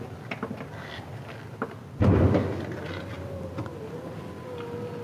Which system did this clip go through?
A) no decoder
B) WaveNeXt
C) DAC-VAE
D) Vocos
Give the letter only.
A